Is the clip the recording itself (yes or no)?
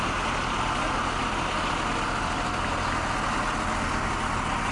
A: yes